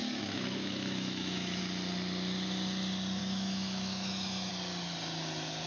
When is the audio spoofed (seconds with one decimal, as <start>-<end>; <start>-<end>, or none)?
0.0-1.6; 3.2-4.5